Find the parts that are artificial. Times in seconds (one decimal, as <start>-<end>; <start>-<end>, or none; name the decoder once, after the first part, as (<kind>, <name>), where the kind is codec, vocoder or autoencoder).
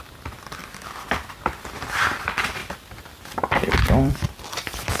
0.0-2.6 (vocoder, BigVGAN v2); 3.7-5.0